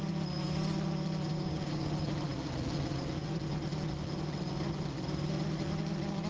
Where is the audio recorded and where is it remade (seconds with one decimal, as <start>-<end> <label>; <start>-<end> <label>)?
0.0-1.3 recorded; 1.3-1.9 remade; 1.9-6.3 recorded